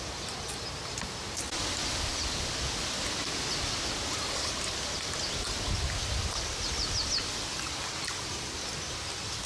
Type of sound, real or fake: real